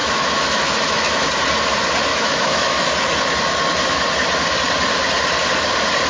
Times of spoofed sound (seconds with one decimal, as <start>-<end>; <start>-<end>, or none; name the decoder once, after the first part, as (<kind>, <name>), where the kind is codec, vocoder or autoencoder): 0.0-1.3 (autoencoder, DAC-VAE); 2.1-2.9